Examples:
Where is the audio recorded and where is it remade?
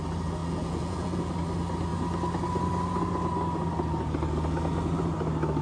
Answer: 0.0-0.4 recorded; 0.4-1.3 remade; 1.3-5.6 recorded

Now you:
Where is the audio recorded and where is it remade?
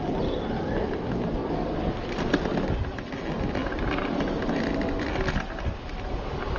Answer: 0.0-6.6 recorded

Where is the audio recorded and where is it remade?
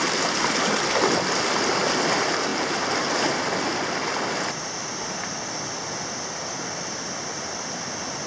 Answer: 0.0-8.3 recorded